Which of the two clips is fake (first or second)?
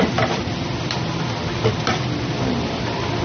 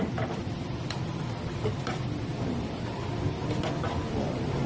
second